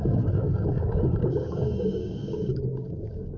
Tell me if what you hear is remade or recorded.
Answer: remade